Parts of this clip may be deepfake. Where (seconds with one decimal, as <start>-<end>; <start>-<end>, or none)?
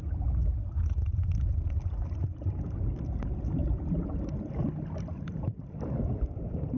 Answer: 1.0-2.5